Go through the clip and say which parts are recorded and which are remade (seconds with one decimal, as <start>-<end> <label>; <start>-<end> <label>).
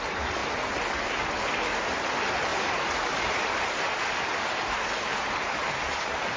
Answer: 0.0-2.5 recorded; 2.5-6.4 remade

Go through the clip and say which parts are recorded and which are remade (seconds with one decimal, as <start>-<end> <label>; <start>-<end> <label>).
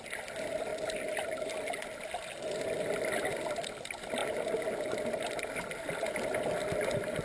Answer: 0.0-7.2 recorded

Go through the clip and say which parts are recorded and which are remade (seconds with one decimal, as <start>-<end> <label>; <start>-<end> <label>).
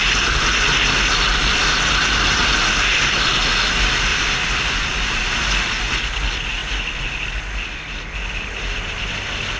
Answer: 0.0-4.1 recorded; 4.1-5.4 remade; 5.4-9.6 recorded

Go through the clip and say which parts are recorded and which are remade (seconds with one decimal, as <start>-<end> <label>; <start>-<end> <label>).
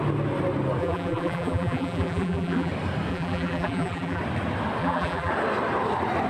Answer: 0.0-0.8 recorded; 0.8-2.7 remade; 2.7-3.1 recorded; 3.1-4.2 remade; 4.2-4.8 recorded; 4.8-5.3 remade; 5.3-6.3 recorded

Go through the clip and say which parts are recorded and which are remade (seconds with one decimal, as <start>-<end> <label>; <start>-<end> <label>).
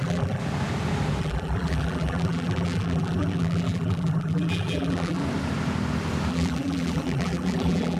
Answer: 0.0-0.4 remade; 0.4-1.2 recorded; 1.2-5.2 remade; 5.2-6.3 recorded; 6.3-8.0 remade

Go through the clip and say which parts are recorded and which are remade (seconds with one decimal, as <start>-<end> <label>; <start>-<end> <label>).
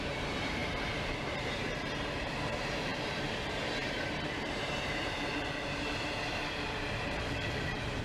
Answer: 0.0-8.0 remade